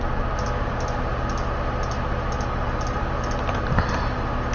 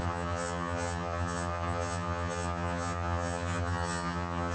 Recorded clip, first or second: first